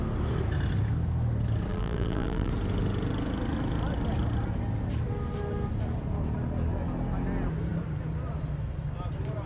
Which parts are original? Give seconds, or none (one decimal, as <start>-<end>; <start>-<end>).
0.0-1.7; 2.5-9.5